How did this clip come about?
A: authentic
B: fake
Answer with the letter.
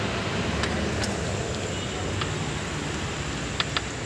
A